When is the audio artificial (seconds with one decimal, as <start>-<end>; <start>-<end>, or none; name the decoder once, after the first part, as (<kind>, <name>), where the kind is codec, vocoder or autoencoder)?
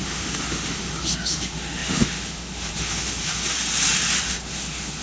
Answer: 0.0-3.4 (autoencoder, DAC-VAE); 4.2-5.0